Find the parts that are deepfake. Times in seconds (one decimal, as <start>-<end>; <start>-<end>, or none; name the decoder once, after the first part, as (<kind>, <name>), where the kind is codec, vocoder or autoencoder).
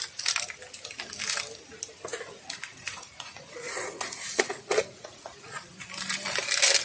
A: 2.1-5.7 (vocoder, Vocos)